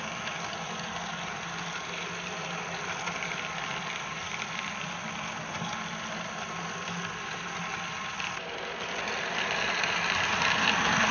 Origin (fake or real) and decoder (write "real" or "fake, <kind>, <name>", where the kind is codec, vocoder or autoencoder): real